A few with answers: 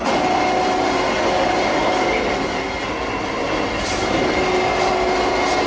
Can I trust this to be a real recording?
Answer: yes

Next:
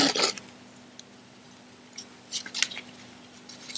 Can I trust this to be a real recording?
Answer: yes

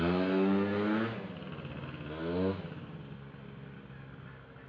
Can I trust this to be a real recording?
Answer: yes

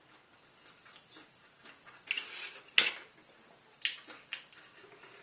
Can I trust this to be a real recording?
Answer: yes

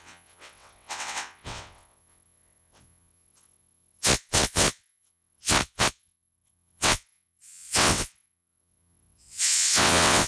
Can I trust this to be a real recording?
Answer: no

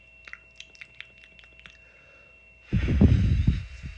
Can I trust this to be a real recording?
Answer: yes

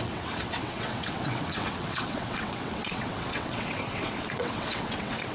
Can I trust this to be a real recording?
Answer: no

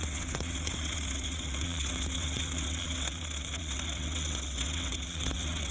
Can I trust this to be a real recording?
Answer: no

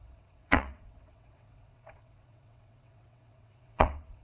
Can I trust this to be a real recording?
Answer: no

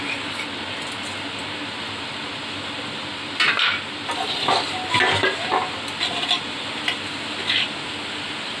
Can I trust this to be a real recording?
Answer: yes